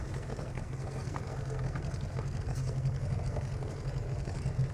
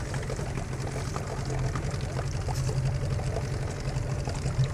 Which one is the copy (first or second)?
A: first